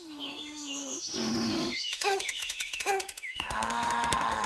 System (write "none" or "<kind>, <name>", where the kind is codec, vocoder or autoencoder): autoencoder, DAC-VAE